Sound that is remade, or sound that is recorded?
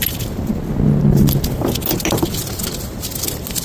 recorded